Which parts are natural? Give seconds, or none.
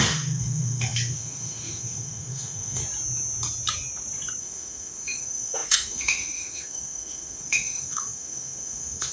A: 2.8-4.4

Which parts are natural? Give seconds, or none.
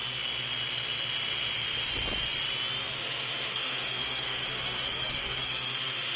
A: 0.0-3.0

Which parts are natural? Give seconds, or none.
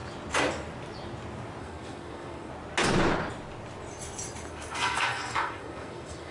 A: 0.0-1.6; 2.5-4.5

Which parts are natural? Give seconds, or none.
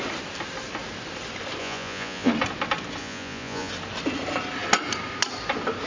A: 0.0-1.6; 2.3-3.0; 3.7-5.9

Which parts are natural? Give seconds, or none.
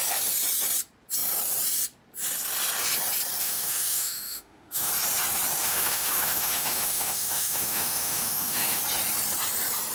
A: 0.0-3.4; 4.9-5.6; 8.8-9.9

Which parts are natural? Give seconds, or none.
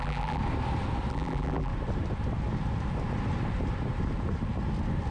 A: 0.4-1.1; 1.7-5.1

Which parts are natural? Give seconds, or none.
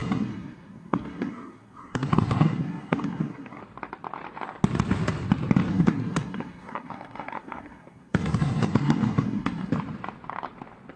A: 3.6-5.7; 9.7-11.0